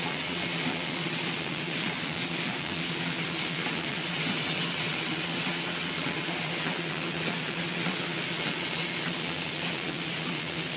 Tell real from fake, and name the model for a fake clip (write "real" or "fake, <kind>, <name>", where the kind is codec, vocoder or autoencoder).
fake, vocoder, WaveNeXt